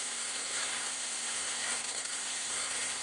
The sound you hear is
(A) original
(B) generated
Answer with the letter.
B